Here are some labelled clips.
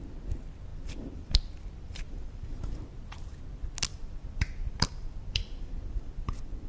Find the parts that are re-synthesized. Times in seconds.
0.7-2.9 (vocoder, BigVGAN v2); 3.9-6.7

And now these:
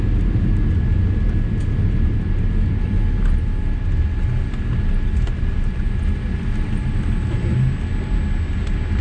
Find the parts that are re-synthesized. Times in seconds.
none

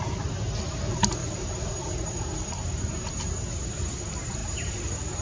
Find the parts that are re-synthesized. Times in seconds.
1.2-3.6 (vocoder, BigVGAN v2); 4.4-5.2

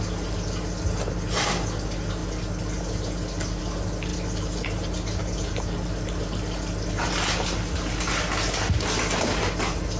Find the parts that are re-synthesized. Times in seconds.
none